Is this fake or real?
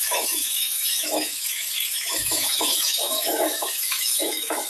fake